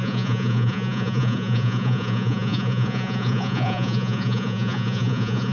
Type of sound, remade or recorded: remade